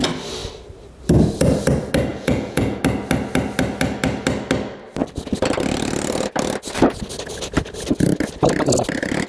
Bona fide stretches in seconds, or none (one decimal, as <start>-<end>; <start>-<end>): 0.0-2.1; 2.8-9.3